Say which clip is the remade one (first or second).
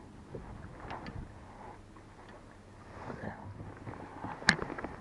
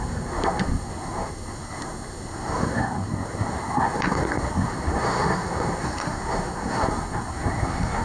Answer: second